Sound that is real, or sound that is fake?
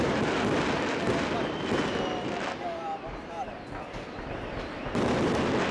real